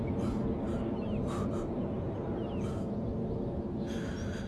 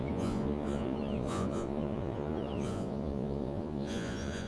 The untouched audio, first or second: first